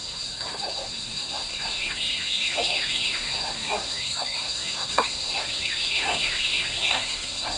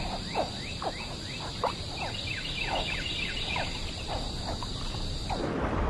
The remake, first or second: first